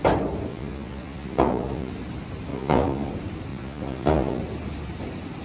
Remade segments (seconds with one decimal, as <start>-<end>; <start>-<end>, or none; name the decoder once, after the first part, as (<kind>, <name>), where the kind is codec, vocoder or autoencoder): 0.5-1.9 (vocoder, Vocos); 2.5-3.1; 3.5-4.4